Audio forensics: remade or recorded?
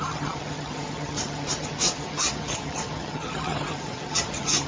remade